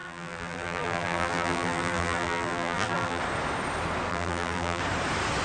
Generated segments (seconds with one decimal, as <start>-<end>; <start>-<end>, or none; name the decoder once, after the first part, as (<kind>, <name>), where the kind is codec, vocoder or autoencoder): 0.0-3.2 (vocoder, BigVGAN v2); 4.1-4.8

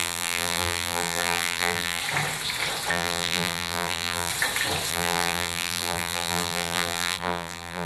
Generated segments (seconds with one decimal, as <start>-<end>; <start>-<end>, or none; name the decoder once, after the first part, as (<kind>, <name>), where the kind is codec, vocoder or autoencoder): 0.0-2.0 (vocoder, BigVGAN v2); 2.9-4.3; 4.9-7.9

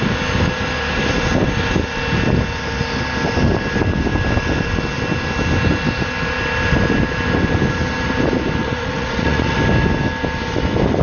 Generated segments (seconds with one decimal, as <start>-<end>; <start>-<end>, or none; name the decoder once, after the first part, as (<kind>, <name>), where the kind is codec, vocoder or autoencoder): 8.6-9.6 (vocoder, Vocos)

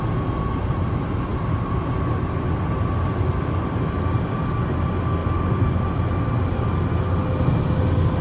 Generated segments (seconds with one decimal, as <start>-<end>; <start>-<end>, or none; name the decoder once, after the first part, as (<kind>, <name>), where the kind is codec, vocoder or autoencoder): none